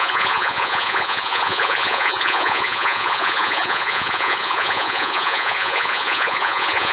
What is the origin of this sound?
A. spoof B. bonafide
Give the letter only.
A